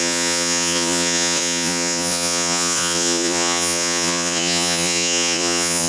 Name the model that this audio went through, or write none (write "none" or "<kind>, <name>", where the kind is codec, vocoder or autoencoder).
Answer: vocoder, Vocos